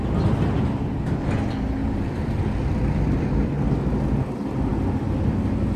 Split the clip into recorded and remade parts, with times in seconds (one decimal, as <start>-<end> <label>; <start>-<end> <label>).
0.0-1.8 recorded; 1.8-3.7 remade; 3.7-5.8 recorded